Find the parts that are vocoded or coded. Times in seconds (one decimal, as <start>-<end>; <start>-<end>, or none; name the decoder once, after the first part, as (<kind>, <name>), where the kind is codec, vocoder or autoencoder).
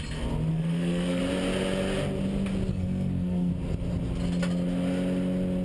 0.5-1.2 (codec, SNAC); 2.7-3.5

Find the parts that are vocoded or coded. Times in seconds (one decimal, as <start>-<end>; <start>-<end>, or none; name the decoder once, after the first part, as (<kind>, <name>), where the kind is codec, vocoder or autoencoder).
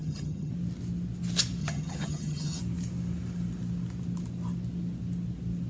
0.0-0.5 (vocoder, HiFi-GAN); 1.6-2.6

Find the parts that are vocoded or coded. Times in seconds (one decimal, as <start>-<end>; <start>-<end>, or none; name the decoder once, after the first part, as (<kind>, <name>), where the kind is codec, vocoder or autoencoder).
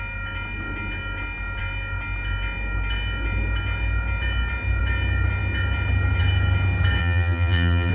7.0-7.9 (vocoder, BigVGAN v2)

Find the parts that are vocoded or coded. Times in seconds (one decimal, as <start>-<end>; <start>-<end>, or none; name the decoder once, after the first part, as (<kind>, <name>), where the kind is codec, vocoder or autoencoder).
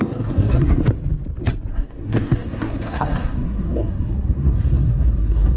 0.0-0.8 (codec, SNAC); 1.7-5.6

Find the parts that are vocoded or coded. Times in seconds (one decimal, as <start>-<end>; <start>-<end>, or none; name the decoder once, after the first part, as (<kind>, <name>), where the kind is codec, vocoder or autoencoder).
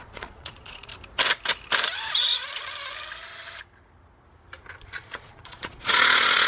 0.0-0.9 (vocoder, Vocos); 4.8-6.5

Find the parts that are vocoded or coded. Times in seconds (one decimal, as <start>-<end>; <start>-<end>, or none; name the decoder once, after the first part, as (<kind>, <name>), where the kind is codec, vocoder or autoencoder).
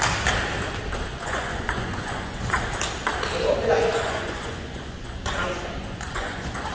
1.1-2.6 (vocoder, Vocos); 3.6-6.7